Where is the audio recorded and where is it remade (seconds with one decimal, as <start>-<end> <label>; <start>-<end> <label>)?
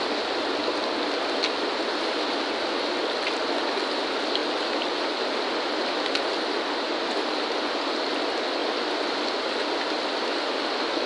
0.0-11.1 recorded